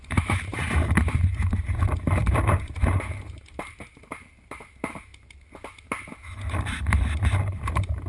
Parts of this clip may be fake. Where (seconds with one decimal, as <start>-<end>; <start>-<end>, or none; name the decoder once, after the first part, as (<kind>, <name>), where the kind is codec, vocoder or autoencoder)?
0.0-5.1 (vocoder, BigVGAN v2); 7.4-8.1